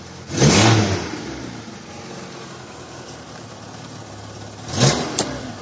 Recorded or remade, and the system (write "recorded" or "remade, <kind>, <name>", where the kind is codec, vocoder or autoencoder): recorded